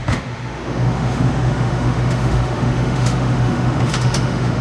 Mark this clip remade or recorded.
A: remade